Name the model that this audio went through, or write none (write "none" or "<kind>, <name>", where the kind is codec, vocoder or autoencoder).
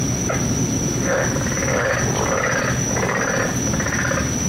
none